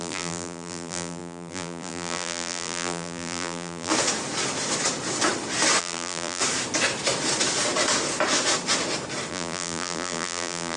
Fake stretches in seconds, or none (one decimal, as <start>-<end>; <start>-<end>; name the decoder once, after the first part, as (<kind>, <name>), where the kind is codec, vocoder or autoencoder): 0.0-3.9 (vocoder, BigVGAN v2); 5.8-6.4; 9.3-10.8